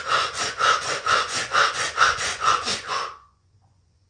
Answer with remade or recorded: remade